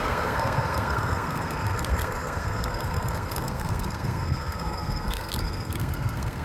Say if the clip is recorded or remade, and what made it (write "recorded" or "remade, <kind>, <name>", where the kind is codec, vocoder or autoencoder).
remade, codec, SNAC